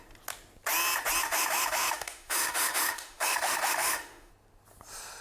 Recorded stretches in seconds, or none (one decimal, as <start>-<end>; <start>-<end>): 0.0-1.2; 4.3-5.2